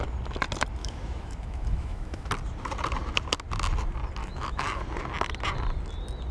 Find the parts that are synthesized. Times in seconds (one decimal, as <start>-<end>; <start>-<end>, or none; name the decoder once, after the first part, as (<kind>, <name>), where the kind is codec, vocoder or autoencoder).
0.8-2.3 (autoencoder, DAC-VAE); 4.2-4.8